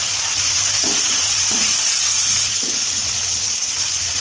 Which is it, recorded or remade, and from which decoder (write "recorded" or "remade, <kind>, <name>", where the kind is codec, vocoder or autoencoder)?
remade, vocoder, Vocos